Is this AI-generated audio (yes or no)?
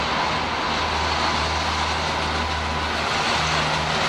no